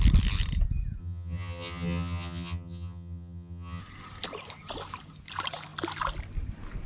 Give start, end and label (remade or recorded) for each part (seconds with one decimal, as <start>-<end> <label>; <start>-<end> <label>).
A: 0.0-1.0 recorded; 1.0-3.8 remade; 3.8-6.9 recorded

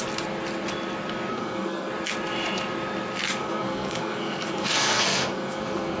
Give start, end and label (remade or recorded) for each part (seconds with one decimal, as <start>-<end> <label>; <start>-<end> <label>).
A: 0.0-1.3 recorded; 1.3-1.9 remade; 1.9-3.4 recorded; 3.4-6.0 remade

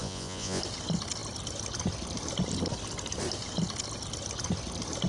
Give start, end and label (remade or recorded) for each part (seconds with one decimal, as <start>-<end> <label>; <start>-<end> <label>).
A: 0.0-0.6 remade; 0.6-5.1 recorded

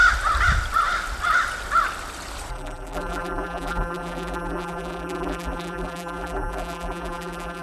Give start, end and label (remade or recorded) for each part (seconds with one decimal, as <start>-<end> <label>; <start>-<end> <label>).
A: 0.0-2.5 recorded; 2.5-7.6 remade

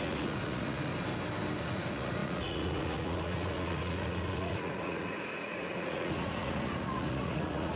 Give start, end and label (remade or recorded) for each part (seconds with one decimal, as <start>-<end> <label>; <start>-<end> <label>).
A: 0.0-0.9 remade; 0.9-1.6 recorded; 1.6-7.8 remade

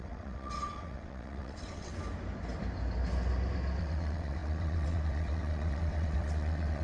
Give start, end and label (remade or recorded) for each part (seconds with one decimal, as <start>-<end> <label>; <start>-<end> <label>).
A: 0.0-1.9 remade; 1.9-3.8 recorded; 3.8-6.8 remade

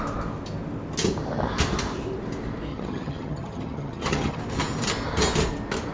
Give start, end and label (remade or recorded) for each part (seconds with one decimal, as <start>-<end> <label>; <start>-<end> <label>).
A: 0.0-2.7 recorded; 2.7-4.4 remade; 4.4-5.9 recorded